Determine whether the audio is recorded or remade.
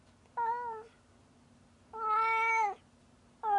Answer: recorded